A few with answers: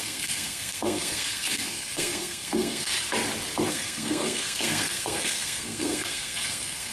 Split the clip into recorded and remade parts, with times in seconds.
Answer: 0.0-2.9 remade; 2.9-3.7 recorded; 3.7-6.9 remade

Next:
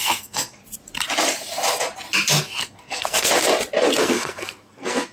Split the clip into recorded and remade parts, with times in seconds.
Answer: 0.0-0.6 remade; 0.6-2.4 recorded; 2.4-3.3 remade; 3.3-4.0 recorded; 4.0-5.1 remade

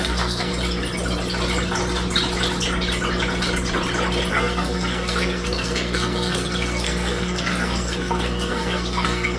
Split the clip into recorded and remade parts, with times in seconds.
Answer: 0.0-0.5 remade; 0.5-4.3 recorded; 4.3-9.4 remade

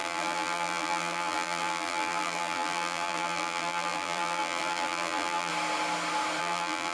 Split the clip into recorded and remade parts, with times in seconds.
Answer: 0.0-5.5 remade; 5.5-6.4 recorded; 6.4-6.9 remade

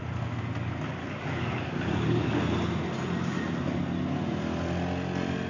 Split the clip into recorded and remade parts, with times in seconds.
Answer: 0.0-1.0 recorded; 1.0-2.3 remade; 2.3-5.5 recorded

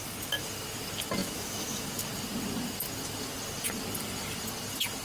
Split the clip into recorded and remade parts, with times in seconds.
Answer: 0.0-1.2 recorded; 1.2-2.0 remade; 2.0-5.0 recorded